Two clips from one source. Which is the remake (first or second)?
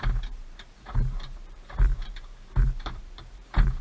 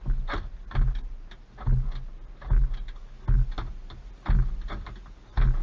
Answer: first